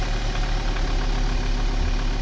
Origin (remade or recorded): recorded